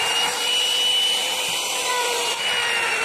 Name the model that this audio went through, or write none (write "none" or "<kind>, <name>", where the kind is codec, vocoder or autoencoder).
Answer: vocoder, BigVGAN v2